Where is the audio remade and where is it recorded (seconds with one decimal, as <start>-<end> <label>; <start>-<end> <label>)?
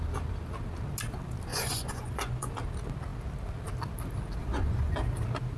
0.0-1.5 recorded; 1.5-2.5 remade; 2.5-4.4 recorded; 4.4-4.9 remade; 4.9-5.6 recorded